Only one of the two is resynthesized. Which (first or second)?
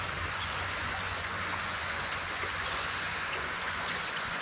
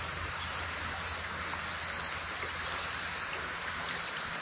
first